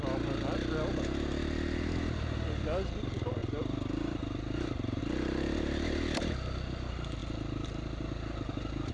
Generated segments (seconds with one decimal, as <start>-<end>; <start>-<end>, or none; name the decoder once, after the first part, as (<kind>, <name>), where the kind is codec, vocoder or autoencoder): 3.4-5.0 (vocoder, BigVGAN v2)